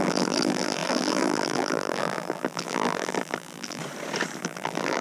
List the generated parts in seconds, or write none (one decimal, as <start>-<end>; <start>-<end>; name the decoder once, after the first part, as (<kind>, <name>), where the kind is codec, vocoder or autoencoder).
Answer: 0.0-3.8 (vocoder, BigVGAN v2); 4.4-5.0